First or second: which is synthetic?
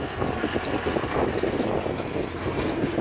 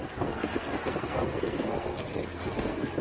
second